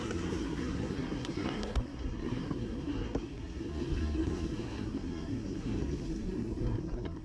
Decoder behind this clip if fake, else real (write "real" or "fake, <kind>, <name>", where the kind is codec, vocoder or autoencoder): fake, codec, SNAC